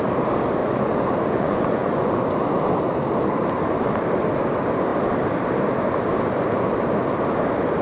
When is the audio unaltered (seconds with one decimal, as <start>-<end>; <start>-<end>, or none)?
0.0-0.6; 2.2-7.8